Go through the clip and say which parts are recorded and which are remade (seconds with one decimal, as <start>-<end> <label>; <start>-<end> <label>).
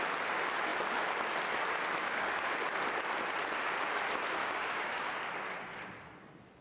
0.0-2.0 recorded; 2.0-2.6 remade; 2.6-4.4 recorded; 4.4-5.1 remade; 5.1-6.6 recorded